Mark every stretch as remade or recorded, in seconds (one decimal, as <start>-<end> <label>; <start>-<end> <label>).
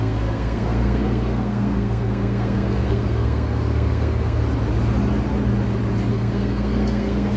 0.0-4.4 remade; 4.4-6.1 recorded; 6.1-7.4 remade